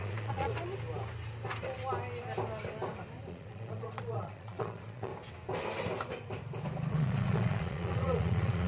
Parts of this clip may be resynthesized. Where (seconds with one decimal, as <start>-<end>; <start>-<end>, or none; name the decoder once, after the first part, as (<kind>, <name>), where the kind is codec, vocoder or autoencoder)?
0.0-0.5 (vocoder, Vocos); 3.3-5.1; 6.9-8.7